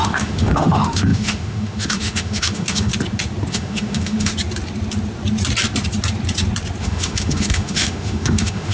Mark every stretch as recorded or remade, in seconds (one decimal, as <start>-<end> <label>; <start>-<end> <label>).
0.0-2.9 remade; 2.9-3.5 recorded; 3.5-4.3 remade; 4.3-6.8 recorded; 6.8-8.7 remade